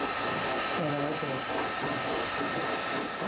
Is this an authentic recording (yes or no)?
yes